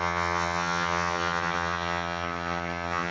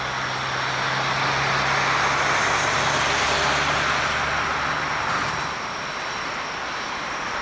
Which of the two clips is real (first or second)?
second